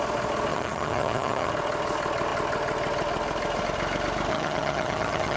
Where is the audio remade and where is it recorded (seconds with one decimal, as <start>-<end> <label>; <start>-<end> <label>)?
0.0-0.5 recorded; 0.5-1.5 remade; 1.5-4.3 recorded; 4.3-5.4 remade